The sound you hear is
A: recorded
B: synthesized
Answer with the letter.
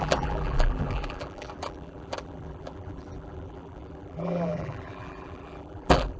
B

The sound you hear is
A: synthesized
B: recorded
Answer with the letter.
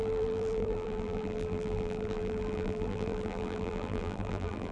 A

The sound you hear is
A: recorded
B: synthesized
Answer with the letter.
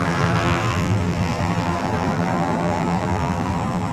B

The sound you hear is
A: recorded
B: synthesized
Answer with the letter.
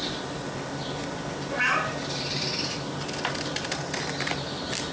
A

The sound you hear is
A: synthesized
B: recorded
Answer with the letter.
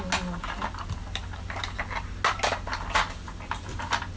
B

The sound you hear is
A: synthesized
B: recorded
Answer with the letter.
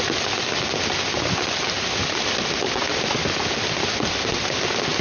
B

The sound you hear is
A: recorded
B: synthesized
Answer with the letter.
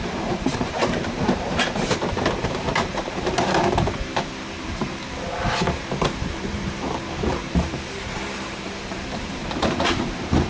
B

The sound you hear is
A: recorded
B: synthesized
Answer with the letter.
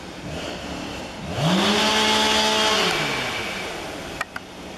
A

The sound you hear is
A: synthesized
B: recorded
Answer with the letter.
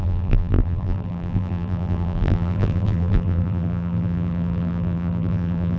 A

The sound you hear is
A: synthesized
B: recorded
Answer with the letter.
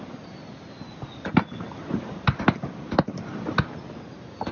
B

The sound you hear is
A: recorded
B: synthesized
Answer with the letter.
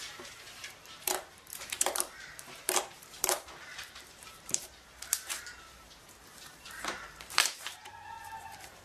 B